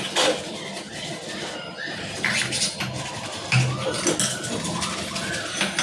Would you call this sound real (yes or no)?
yes